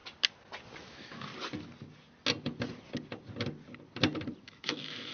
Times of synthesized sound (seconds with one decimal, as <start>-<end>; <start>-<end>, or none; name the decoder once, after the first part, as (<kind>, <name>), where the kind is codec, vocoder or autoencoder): 0.8-1.3 (autoencoder, DAC-VAE); 4.4-5.1